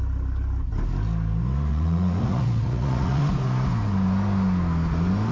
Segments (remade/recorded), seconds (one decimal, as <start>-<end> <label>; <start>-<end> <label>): 0.0-1.7 recorded; 1.7-3.2 remade; 3.2-5.3 recorded